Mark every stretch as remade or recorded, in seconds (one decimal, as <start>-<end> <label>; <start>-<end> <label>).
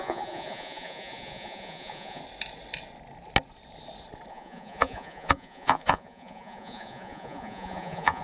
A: 0.0-2.2 remade; 2.2-4.3 recorded; 4.3-8.2 remade